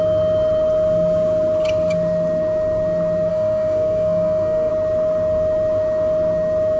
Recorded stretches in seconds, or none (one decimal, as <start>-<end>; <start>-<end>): 0.0-3.3; 4.7-6.8